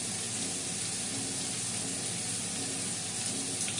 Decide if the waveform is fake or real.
real